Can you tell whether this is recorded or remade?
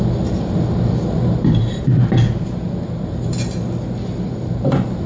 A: recorded